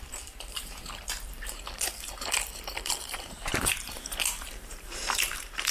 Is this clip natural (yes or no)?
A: no